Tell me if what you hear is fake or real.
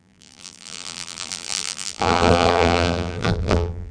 fake